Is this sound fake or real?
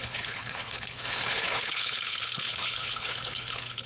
fake